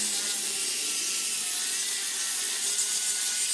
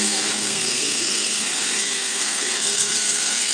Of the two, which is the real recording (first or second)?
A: first